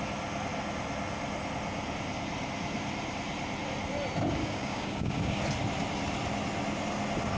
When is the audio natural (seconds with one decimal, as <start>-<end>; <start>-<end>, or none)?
0.0-4.4; 5.4-7.4